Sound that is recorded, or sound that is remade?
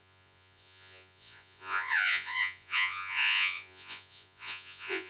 remade